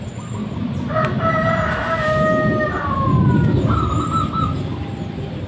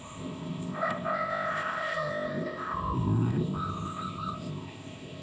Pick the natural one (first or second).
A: first